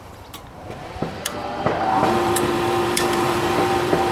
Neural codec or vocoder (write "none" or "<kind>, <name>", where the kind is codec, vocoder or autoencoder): vocoder, BigVGAN v2